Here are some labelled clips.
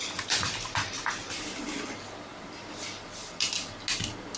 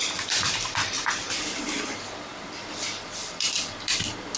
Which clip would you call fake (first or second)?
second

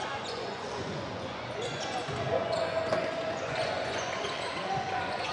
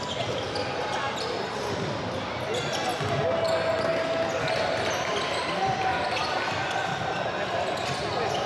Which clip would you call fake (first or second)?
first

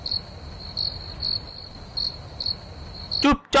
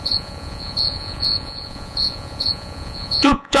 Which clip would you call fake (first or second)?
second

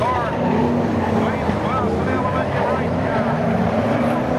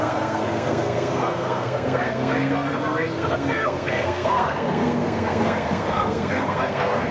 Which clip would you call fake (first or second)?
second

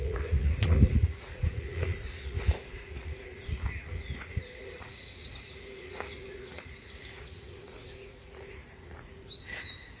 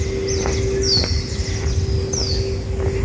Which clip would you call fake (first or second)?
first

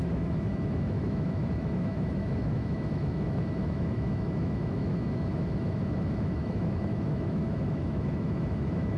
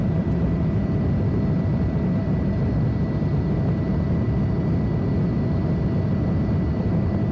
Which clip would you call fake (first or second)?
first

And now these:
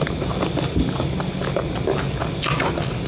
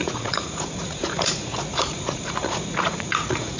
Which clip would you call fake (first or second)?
second